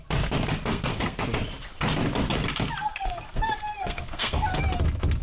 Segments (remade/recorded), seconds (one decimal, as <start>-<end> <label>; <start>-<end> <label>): 0.0-0.7 recorded; 0.7-1.2 remade; 1.2-2.8 recorded; 2.8-4.6 remade; 4.6-5.2 recorded